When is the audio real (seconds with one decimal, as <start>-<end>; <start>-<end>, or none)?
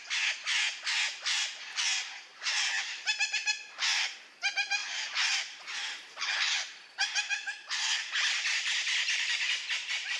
0.0-2.3; 4.0-4.8; 6.3-7.4; 9.5-10.2